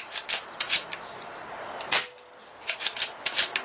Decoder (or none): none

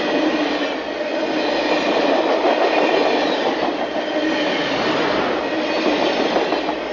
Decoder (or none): none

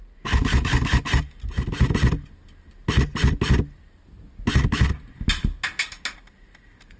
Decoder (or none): none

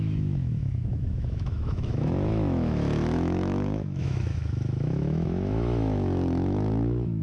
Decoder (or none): autoencoder, DAC-VAE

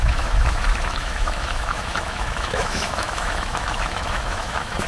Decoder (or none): autoencoder, DAC-VAE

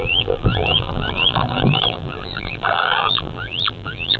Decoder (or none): vocoder, BigVGAN v2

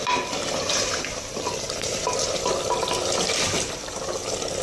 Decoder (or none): none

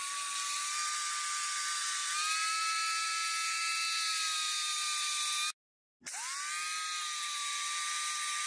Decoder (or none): none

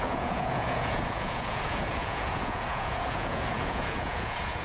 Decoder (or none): vocoder, Vocos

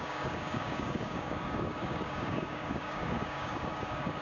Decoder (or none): codec, DAC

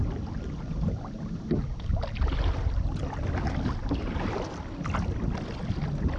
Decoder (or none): none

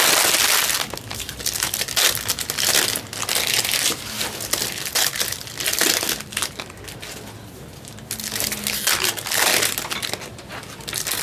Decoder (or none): none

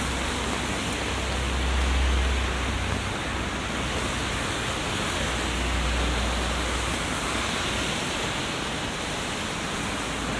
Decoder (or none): none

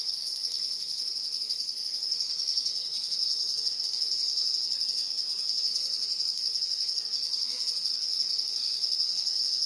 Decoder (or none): codec, SNAC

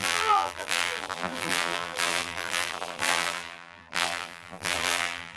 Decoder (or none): vocoder, BigVGAN v2